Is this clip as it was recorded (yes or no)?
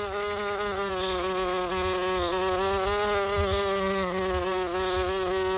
yes